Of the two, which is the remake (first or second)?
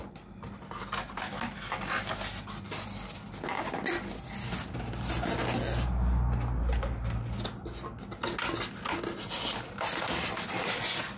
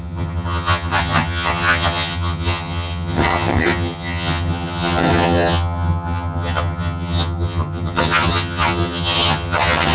second